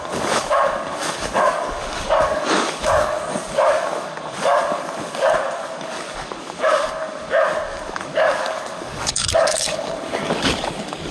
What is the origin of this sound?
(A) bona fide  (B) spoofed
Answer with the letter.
B